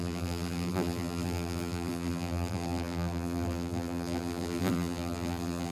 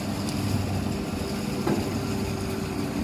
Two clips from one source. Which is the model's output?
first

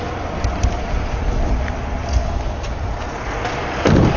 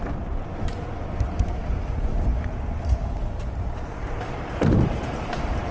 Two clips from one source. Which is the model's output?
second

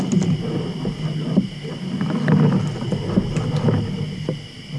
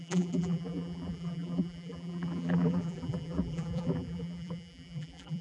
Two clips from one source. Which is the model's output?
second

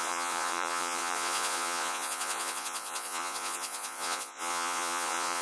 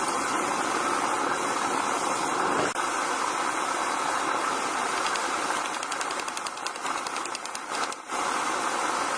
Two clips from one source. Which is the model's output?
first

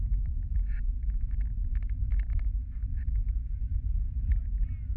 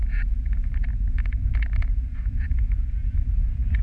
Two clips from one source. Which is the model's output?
second